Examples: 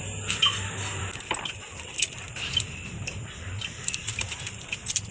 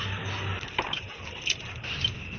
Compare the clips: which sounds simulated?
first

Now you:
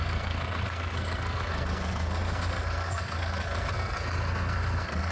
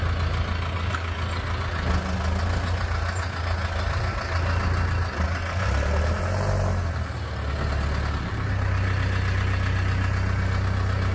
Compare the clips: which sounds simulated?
first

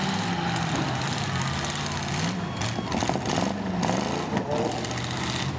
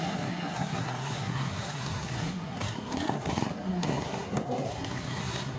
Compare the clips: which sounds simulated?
second